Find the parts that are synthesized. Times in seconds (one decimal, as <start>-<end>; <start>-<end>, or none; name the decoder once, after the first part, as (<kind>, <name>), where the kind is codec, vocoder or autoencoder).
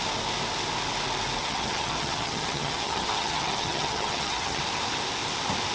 1.4-4.6 (vocoder, HiFi-GAN)